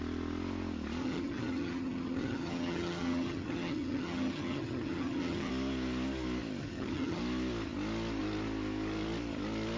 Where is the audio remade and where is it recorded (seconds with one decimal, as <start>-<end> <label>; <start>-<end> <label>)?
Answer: 0.0-1.0 recorded; 1.0-5.5 remade; 5.5-6.6 recorded; 6.6-7.2 remade; 7.2-9.8 recorded